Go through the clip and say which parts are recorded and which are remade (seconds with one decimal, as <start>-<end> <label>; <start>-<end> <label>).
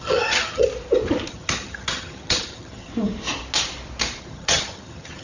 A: 0.0-0.7 remade; 0.7-1.3 recorded; 1.3-2.9 remade; 2.9-4.2 recorded; 4.2-5.2 remade